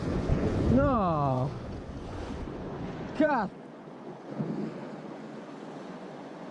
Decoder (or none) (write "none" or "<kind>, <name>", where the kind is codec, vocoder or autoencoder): vocoder, Vocos